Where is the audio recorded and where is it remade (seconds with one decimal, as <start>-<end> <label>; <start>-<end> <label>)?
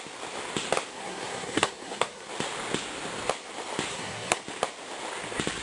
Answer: 0.0-0.9 recorded; 0.9-2.3 remade; 2.3-3.9 recorded; 3.9-4.4 remade; 4.4-5.6 recorded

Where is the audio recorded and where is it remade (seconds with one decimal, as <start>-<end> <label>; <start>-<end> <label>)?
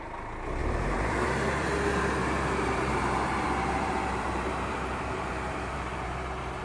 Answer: 0.0-0.6 recorded; 0.6-1.6 remade; 1.6-2.2 recorded; 2.2-6.6 remade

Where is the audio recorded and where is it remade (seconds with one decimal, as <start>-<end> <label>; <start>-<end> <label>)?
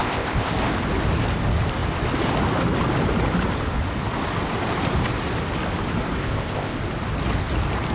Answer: 0.0-0.5 remade; 0.5-6.2 recorded; 6.2-6.8 remade; 6.8-7.9 recorded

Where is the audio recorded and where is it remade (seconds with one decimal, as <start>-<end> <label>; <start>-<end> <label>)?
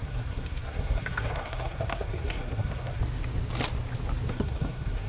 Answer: 0.0-3.0 remade; 3.0-4.3 recorded; 4.3-5.1 remade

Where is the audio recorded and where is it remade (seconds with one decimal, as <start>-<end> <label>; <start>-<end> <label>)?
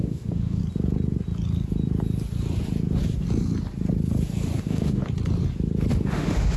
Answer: 0.0-0.6 remade; 0.6-4.6 recorded; 4.6-5.0 remade; 5.0-5.9 recorded; 5.9-6.6 remade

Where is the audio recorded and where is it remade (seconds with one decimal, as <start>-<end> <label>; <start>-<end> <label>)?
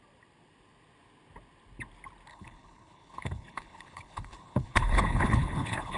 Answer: 0.0-2.3 recorded; 2.3-6.0 remade